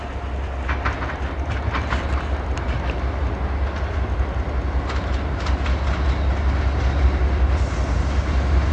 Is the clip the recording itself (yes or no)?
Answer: yes